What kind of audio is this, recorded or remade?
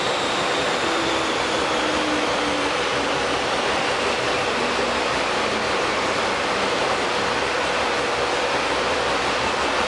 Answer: remade